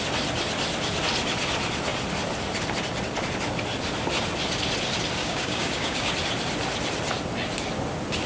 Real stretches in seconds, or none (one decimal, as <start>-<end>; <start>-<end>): 0.0-5.2; 6.1-8.3